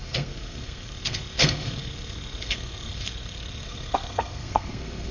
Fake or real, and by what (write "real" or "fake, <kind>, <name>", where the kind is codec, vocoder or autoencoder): fake, codec, SNAC